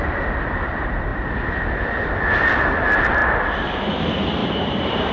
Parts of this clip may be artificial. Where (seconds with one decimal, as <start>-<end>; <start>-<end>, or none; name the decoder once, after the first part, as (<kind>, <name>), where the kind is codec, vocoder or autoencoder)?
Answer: 0.0-1.1 (vocoder, BigVGAN v2); 2.5-5.1